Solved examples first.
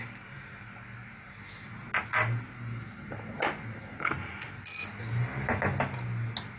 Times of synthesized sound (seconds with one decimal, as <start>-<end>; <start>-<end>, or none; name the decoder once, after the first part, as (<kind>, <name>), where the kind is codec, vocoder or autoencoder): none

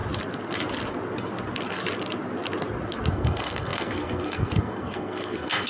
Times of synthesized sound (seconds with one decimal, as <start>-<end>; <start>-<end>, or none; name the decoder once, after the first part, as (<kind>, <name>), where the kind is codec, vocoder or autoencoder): 3.1-5.7 (codec, SNAC)

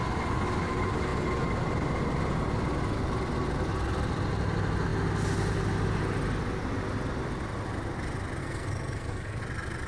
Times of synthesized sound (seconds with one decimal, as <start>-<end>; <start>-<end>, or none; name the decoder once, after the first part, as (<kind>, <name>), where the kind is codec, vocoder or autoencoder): 8.4-9.4 (codec, SNAC)

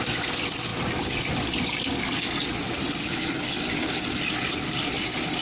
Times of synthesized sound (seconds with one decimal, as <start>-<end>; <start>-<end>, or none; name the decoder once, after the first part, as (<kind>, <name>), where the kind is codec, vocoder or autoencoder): none

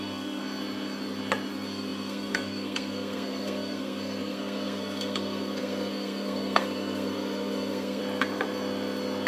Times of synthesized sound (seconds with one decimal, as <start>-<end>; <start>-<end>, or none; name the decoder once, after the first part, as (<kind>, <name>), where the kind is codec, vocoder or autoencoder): 0.0-0.4 (codec, SNAC); 1.5-8.0